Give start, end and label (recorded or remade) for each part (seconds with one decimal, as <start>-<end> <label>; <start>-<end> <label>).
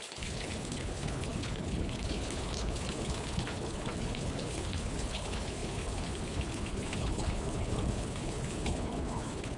0.0-9.6 remade